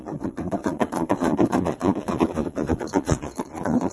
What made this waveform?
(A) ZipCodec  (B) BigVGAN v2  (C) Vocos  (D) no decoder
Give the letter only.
C